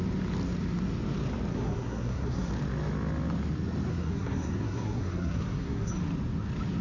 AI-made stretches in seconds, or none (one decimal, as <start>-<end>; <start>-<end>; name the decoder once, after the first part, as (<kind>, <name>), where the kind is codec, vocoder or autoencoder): 1.5-2.5 (codec, SNAC); 3.9-5.9